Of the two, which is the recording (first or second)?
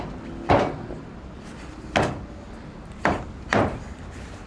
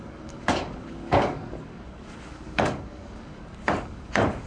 first